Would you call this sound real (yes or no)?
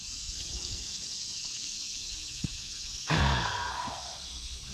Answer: no